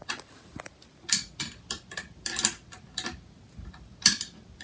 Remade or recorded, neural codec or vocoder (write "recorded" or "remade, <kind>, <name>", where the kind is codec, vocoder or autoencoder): recorded